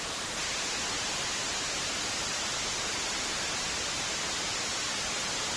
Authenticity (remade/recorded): recorded